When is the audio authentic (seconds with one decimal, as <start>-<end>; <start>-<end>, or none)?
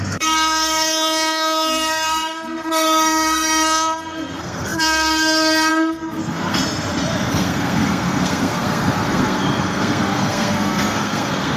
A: 6.6-7.3